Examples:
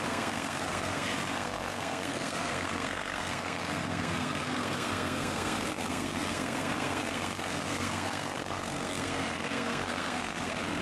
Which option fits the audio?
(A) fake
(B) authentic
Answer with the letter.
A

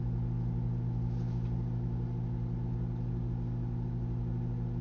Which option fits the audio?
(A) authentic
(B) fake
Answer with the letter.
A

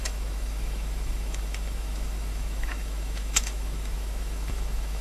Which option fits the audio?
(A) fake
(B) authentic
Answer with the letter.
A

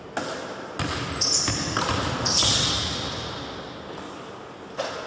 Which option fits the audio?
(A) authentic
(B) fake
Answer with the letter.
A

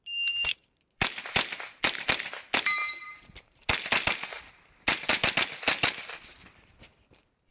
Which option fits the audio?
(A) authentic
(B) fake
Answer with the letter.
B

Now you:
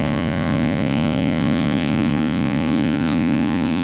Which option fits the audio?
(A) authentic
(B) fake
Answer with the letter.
B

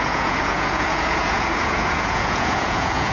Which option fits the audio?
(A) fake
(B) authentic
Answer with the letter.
A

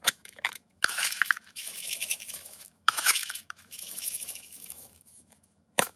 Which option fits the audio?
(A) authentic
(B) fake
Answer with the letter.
B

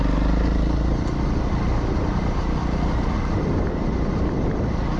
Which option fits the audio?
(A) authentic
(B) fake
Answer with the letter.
A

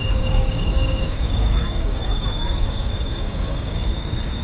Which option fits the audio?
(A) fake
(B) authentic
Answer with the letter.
A